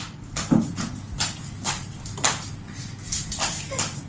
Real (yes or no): yes